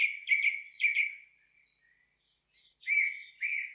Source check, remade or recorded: recorded